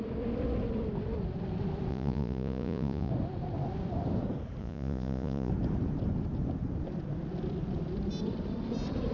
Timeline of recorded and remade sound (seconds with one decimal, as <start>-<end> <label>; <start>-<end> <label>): 0.0-1.9 recorded; 1.9-3.1 remade; 3.1-4.6 recorded; 4.6-5.5 remade; 5.5-9.1 recorded